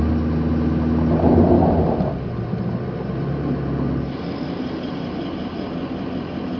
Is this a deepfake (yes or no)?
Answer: no